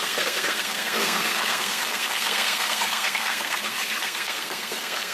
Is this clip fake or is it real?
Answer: fake